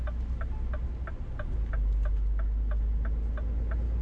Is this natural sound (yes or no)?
yes